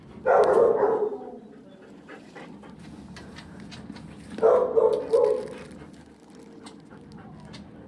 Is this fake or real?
real